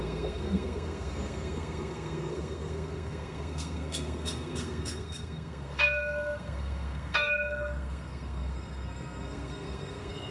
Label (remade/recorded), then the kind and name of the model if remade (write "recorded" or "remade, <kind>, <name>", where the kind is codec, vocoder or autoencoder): remade, codec, SNAC